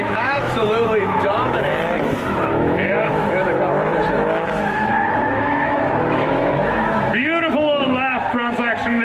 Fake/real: fake